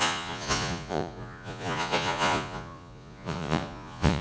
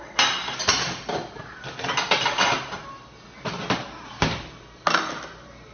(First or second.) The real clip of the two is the second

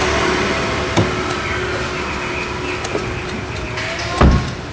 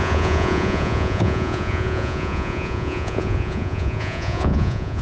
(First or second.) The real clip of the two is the first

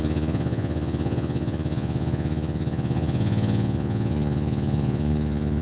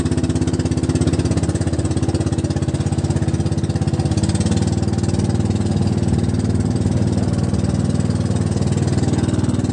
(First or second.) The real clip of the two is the second